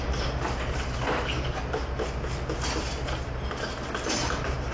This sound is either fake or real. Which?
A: real